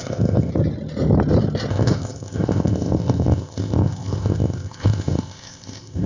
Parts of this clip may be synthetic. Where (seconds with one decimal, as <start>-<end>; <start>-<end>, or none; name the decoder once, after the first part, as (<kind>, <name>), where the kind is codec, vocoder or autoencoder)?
0.0-0.5 (codec, ZipCodec); 1.7-6.1